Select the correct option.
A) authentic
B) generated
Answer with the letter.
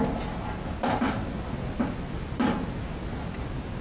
A